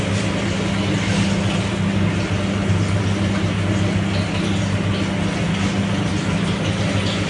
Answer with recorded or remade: recorded